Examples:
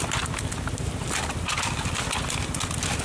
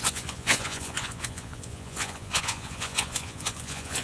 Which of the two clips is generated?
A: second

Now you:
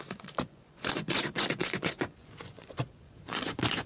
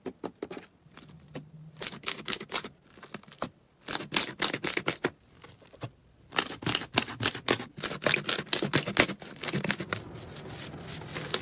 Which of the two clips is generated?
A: first